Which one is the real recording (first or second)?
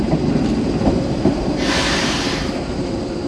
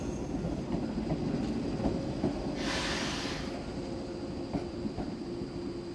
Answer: second